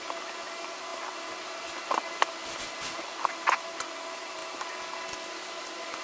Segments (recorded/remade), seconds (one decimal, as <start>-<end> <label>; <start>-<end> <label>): 0.0-6.0 recorded